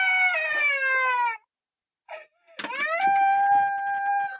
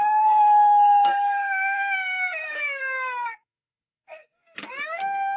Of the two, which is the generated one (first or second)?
second